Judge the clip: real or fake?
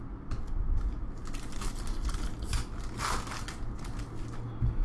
real